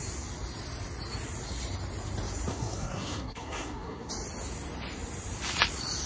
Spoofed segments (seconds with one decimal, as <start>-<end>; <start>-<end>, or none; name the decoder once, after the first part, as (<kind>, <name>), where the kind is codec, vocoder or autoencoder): 2.5-4.1 (codec, SNAC)

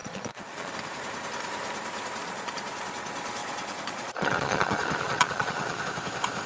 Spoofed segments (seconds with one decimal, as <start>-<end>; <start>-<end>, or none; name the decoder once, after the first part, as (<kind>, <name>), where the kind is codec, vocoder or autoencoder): 0.0-0.7 (vocoder, Vocos); 2.2-2.7; 3.4-5.8

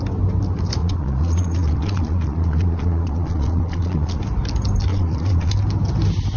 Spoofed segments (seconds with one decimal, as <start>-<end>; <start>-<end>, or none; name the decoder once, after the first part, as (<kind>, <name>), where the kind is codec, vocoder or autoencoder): 0.8-4.2 (vocoder, Vocos); 4.9-5.5